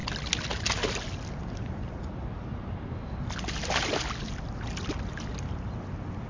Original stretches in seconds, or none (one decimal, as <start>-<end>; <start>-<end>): 0.0-6.3